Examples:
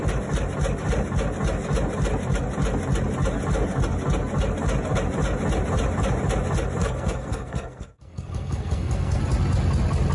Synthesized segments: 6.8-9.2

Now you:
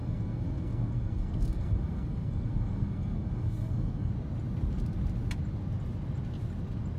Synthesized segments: 0.0-4.1

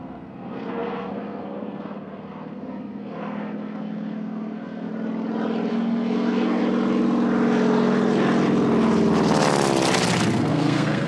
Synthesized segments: 0.0-4.9; 5.7-6.6; 10.4-11.1

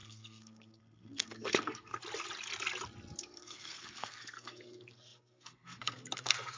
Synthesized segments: 0.0-2.0; 3.2-6.6

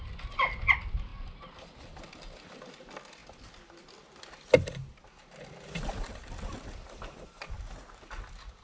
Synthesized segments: none